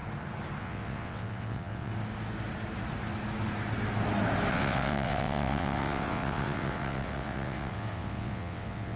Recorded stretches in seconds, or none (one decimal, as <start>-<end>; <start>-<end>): 0.0-0.6; 1.9-4.5